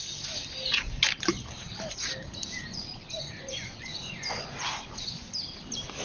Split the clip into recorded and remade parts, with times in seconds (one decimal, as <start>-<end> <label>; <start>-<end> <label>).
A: 0.0-2.7 recorded; 2.7-5.3 remade; 5.3-6.0 recorded